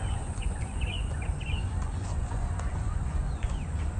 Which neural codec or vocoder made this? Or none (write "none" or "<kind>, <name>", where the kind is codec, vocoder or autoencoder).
vocoder, Vocos